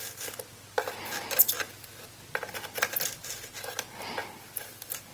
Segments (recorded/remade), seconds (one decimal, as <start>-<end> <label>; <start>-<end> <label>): 0.0-4.2 recorded; 4.2-5.1 remade